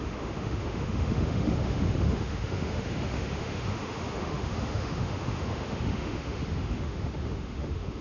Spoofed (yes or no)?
yes